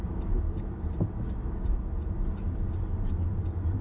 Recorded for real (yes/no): yes